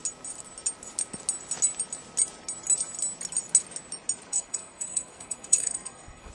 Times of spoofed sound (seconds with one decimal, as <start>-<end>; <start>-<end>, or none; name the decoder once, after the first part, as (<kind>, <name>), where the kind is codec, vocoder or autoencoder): 4.3-6.3 (codec, SNAC)